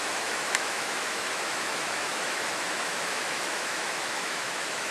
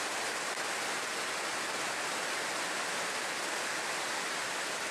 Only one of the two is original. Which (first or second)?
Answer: second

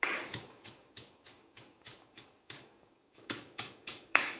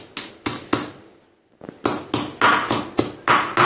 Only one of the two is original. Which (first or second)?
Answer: second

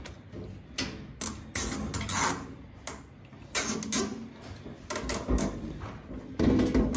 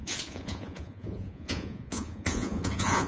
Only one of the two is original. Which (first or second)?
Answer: first